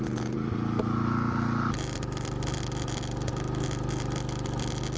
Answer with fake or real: real